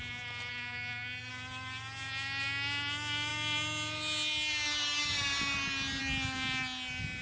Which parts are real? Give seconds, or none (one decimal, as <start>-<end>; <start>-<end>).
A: 0.0-0.5; 1.3-7.2